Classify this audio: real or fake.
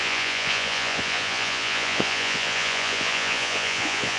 fake